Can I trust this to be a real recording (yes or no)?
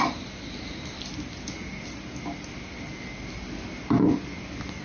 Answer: yes